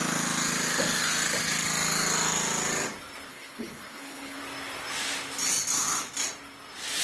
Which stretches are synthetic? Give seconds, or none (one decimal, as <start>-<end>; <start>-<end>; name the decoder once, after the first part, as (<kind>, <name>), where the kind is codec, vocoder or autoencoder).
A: 3.3-4.4 (codec, HILCodec)